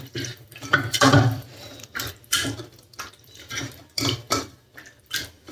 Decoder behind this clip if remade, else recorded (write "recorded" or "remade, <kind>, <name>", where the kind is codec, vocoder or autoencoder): remade, vocoder, BigVGAN v2